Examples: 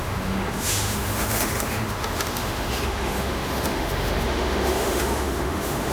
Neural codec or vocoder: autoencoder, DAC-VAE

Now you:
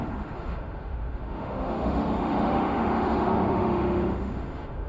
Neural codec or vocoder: autoencoder, DAC-VAE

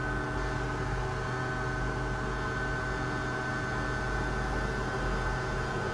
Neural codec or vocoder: none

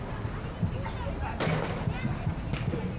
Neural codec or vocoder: none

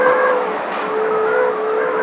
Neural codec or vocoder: autoencoder, DAC-VAE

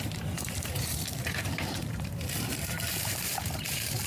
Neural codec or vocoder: vocoder, BigVGAN v2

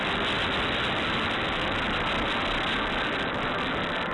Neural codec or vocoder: none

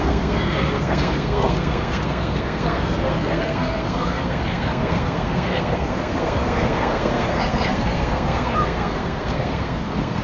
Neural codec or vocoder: codec, SNAC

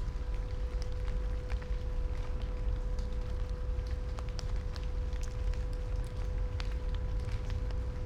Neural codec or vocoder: none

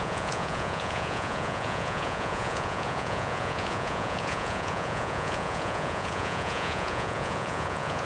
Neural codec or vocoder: vocoder, Vocos